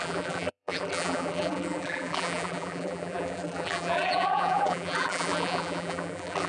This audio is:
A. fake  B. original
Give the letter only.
A